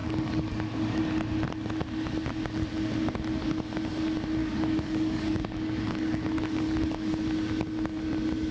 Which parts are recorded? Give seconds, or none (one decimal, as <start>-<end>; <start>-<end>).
1.0-4.4; 7.1-8.5